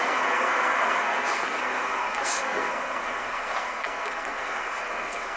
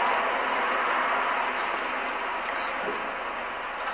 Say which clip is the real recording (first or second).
second